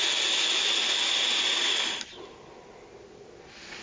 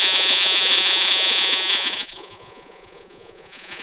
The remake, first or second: second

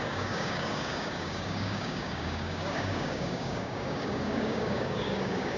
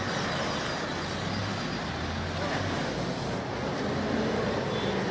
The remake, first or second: first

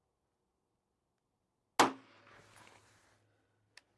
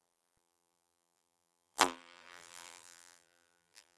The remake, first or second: second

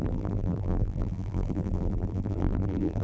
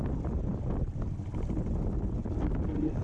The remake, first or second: first